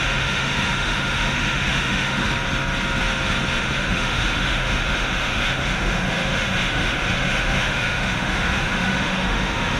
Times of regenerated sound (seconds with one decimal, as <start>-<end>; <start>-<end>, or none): 0.0-2.2; 3.6-9.8